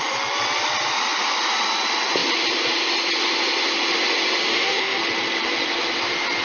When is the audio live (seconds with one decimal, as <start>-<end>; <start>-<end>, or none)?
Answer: 0.0-4.5; 5.0-6.4